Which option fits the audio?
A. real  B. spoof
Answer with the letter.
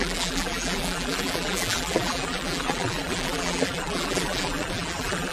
B